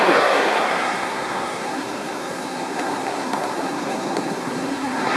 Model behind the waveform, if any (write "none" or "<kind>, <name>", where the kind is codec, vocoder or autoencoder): codec, SNAC